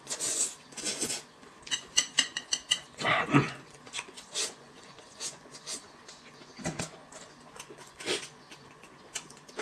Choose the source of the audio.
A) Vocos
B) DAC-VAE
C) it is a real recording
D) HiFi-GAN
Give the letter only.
A